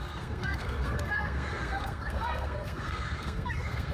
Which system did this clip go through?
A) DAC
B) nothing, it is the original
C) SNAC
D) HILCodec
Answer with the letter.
C